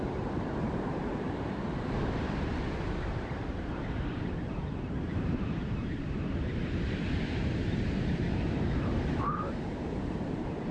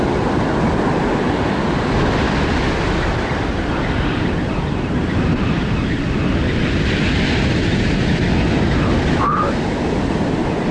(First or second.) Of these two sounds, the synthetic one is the first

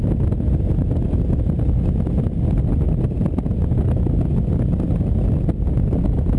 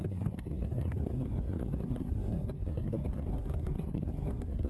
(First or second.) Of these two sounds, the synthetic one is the second